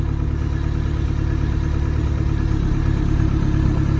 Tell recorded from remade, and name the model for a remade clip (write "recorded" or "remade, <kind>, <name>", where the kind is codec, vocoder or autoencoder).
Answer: recorded